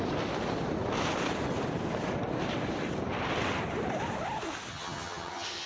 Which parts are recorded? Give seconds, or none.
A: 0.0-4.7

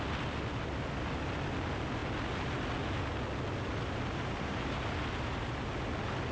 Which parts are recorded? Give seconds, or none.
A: 0.0-6.3

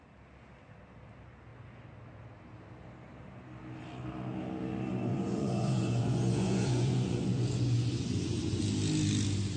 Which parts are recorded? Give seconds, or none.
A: 0.0-5.1; 8.6-9.6

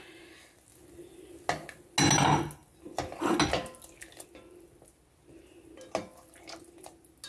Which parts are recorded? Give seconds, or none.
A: 0.0-7.3

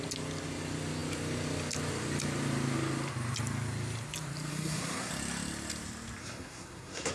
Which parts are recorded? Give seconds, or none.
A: 0.0-4.5; 5.1-6.2

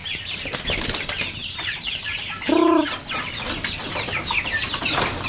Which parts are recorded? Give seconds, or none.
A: 0.6-1.4; 2.2-4.2

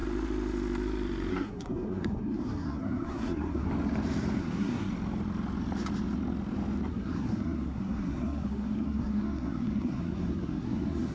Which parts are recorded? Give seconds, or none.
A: 0.0-1.3; 3.7-4.4; 4.9-6.9

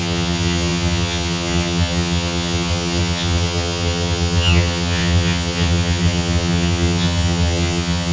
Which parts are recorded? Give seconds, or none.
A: none